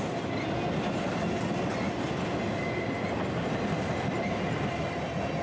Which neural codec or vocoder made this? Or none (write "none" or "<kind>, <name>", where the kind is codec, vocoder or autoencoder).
none